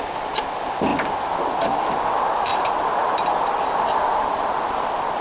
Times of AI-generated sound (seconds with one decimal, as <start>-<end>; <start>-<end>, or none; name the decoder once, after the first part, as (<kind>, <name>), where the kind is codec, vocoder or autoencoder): 2.5-4.8 (vocoder, BigVGAN v2)